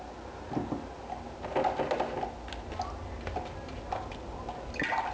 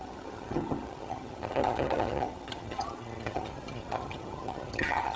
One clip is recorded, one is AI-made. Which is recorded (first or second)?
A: first